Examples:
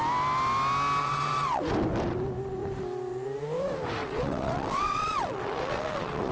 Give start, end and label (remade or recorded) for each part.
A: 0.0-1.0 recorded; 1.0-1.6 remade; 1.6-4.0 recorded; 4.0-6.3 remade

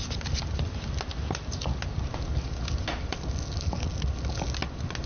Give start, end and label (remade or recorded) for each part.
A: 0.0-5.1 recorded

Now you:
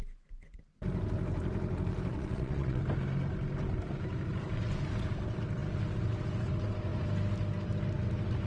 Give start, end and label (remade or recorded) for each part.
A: 0.0-2.1 recorded; 2.1-2.8 remade; 2.8-8.5 recorded

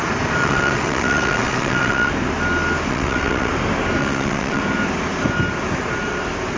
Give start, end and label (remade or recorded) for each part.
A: 0.0-0.4 recorded; 0.4-2.1 remade; 2.1-2.9 recorded; 2.9-3.5 remade; 3.5-4.0 recorded; 4.0-4.6 remade; 4.6-6.6 recorded

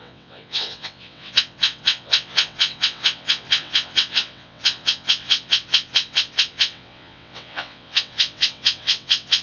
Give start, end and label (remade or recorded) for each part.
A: 0.0-9.4 remade

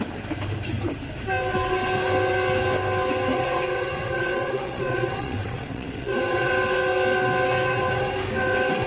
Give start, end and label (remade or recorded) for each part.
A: 0.0-3.3 recorded; 3.3-6.5 remade; 6.5-8.9 recorded

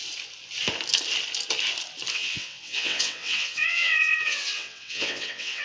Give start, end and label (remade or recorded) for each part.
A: 0.0-2.1 recorded; 2.1-5.6 remade

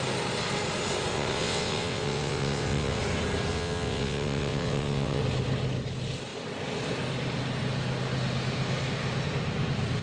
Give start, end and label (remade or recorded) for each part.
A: 0.0-1.1 recorded; 1.1-3.0 remade; 3.0-3.5 recorded; 3.5-5.2 remade; 5.2-10.0 recorded